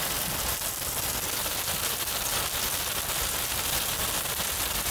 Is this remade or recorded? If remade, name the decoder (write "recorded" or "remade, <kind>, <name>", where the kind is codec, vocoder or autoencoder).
recorded